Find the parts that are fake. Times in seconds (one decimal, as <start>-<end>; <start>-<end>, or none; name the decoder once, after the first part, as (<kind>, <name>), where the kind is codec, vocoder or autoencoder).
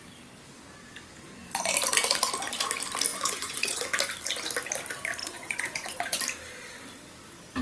3.1-3.8 (vocoder, Vocos); 5.2-6.2